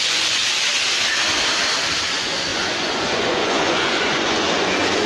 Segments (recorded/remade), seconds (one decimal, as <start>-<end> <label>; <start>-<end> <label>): 0.0-0.4 remade; 0.4-2.1 recorded; 2.1-5.1 remade